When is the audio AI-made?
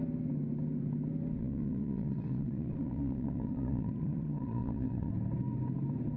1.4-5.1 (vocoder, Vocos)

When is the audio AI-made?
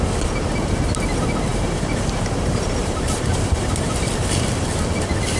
1.5-4.1 (vocoder, BigVGAN v2)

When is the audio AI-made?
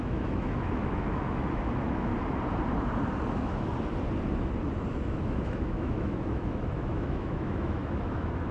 0.0-2.1 (autoencoder, DAC-VAE); 3.3-3.7; 4.9-8.5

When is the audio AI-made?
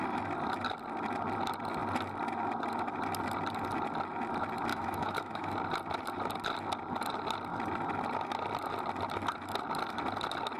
4.7-5.5 (autoencoder, DAC-VAE)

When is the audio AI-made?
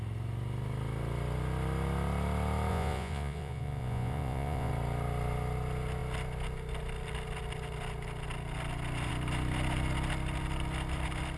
2.7-4.7 (vocoder, Vocos)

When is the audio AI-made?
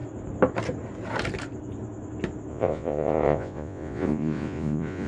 2.5-5.1 (vocoder, Vocos)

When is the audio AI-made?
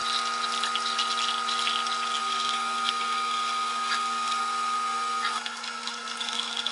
2.2-6.7 (codec, SNAC)